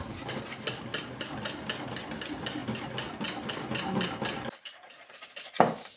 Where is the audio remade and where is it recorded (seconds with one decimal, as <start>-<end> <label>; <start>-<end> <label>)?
0.0-6.0 recorded